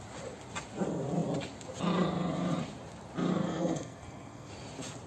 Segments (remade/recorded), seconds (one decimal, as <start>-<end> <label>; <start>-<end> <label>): 0.0-3.3 recorded; 3.3-4.5 remade; 4.5-5.1 recorded

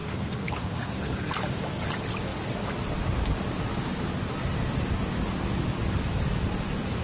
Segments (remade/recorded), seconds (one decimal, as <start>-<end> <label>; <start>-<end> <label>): 0.0-1.3 remade; 1.3-7.0 recorded

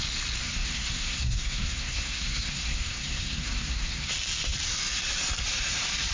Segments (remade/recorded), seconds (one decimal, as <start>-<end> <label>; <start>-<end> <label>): 0.0-0.4 recorded; 0.4-4.1 remade; 4.1-6.1 recorded